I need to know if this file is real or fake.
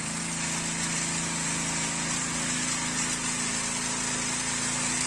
real